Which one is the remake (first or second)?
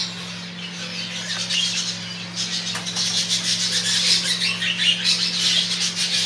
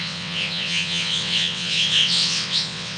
second